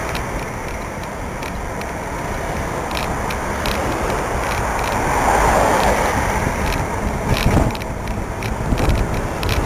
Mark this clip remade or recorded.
remade